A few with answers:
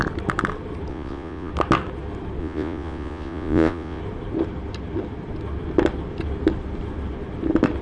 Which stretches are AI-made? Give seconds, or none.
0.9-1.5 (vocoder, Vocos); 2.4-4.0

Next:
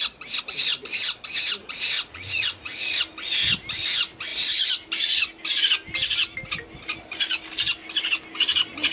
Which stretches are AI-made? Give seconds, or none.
1.6-2.9 (vocoder, Vocos)

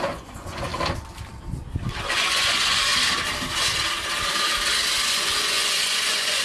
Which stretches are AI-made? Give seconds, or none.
0.0-0.7 (vocoder, Vocos); 2.1-2.9; 5.1-6.4

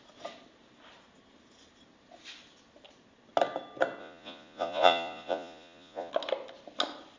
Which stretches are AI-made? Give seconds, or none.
4.0-6.1 (vocoder, Vocos)

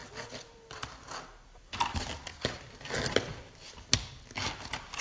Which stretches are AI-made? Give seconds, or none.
none

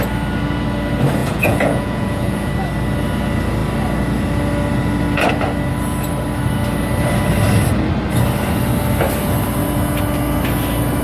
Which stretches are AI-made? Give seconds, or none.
1.2-2.5 (vocoder, Vocos)